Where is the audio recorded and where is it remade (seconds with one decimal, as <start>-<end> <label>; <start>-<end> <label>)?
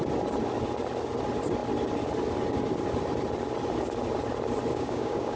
0.0-4.7 recorded; 4.7-5.4 remade